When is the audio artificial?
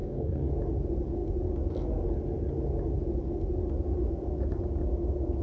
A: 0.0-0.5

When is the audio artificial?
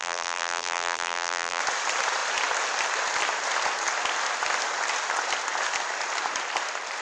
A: 0.0-1.6